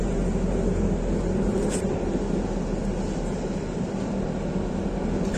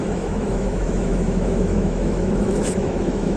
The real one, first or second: first